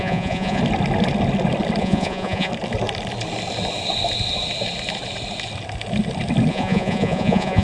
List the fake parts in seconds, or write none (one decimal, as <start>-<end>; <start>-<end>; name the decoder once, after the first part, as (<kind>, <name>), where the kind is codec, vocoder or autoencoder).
0.0-0.6 (vocoder, Vocos); 1.8-2.5; 6.5-7.6